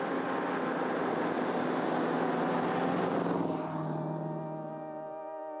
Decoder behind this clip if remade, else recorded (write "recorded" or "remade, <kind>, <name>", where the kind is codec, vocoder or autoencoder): recorded